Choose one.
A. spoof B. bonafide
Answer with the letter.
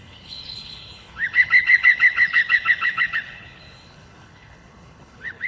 A